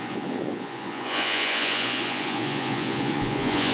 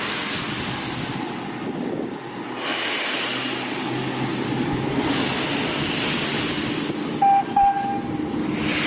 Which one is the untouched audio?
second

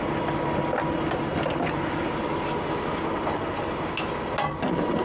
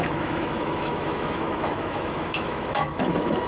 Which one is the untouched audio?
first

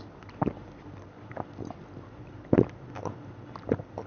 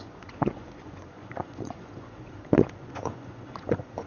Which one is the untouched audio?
first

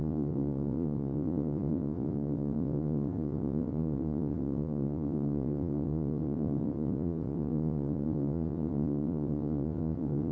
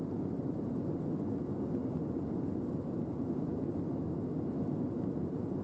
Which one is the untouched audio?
second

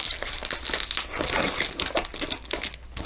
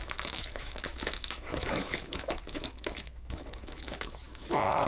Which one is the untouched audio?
first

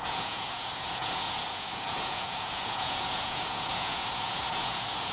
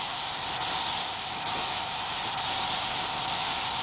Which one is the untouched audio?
second